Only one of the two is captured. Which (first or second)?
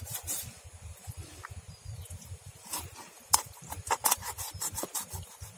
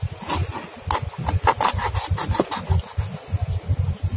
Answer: second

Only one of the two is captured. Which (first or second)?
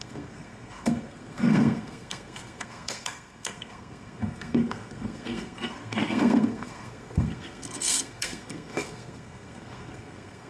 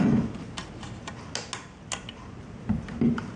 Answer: second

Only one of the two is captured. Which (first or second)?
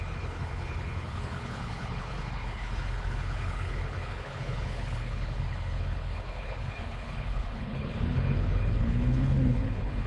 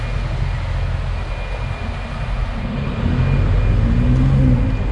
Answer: second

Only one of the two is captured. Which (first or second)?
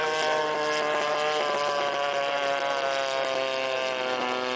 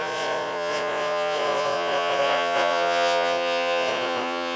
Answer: first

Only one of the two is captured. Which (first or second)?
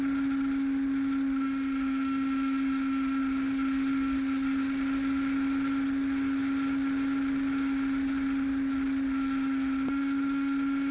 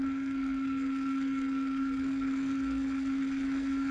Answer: first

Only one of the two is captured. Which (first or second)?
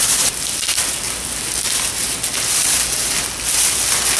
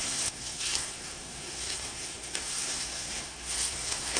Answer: first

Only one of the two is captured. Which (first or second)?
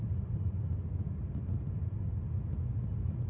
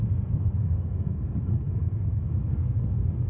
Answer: first